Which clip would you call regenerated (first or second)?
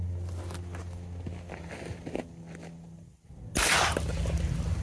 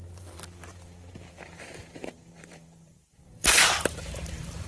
second